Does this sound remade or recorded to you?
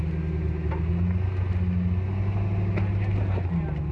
recorded